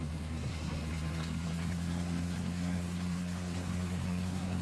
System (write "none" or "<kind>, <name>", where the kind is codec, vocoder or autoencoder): codec, SNAC